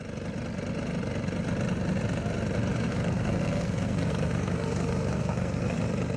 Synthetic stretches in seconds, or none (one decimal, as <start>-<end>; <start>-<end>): 2.7-5.8